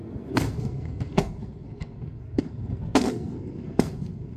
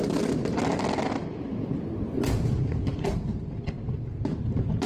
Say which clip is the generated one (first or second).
first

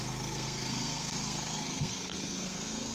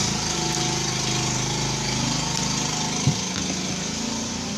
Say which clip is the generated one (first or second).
first